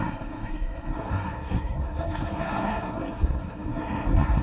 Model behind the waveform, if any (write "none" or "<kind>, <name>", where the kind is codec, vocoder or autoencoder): codec, SNAC